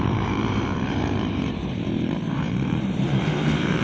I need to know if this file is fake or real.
fake